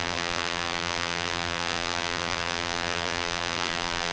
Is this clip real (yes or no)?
no